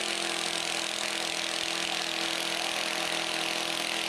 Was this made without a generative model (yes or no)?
yes